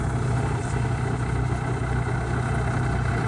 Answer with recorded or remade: recorded